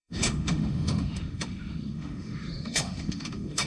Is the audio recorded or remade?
remade